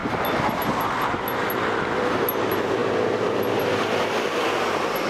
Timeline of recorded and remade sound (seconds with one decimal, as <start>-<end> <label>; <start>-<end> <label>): 0.0-5.1 recorded